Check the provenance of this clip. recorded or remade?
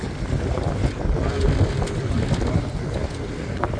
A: recorded